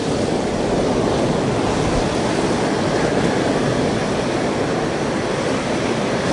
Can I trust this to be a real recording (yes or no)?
yes